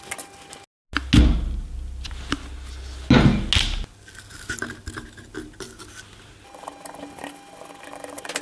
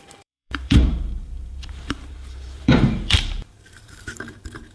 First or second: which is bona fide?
first